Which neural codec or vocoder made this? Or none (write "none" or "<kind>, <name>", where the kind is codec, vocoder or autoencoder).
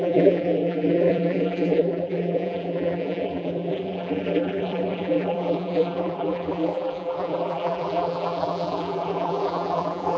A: vocoder, BigVGAN v2